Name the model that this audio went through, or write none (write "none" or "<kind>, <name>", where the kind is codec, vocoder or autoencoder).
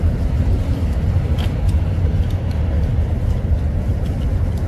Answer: none